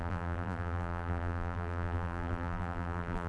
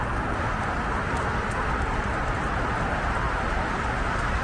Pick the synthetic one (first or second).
first